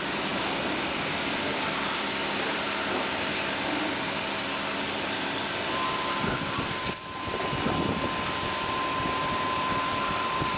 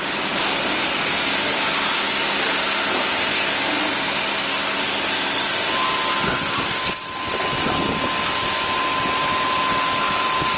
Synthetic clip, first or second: first